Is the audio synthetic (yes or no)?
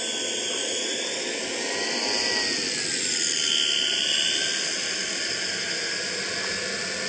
no